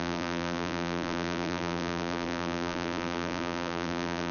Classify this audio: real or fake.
fake